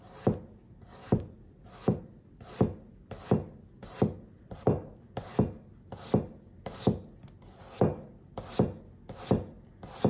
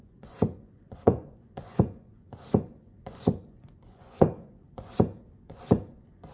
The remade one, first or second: second